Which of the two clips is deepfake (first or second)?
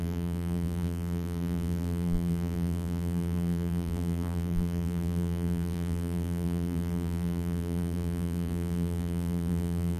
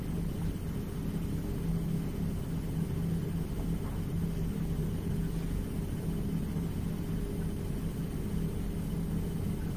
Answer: first